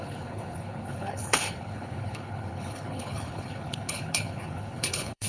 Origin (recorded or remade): remade